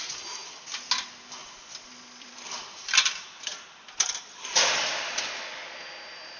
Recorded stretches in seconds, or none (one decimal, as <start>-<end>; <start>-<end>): 0.0-1.4; 5.2-6.4